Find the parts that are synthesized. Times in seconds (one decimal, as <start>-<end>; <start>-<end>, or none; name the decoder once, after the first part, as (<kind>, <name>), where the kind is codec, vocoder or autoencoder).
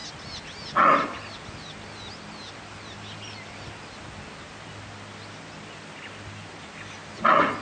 4.6-7.0 (vocoder, BigVGAN v2)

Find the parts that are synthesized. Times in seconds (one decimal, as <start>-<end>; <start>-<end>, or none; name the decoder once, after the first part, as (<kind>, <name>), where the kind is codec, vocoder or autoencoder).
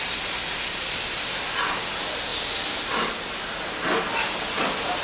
none